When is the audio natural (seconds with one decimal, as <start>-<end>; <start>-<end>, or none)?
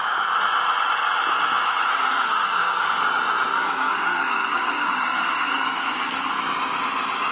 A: 0.0-1.9; 3.0-3.5; 6.4-7.3